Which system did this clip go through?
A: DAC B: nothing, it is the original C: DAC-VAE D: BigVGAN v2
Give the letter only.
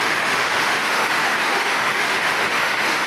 C